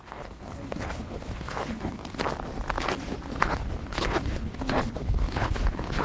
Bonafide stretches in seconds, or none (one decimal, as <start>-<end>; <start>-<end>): 2.0-3.3